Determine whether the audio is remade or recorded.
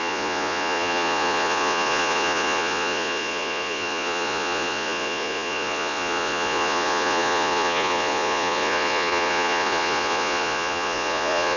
remade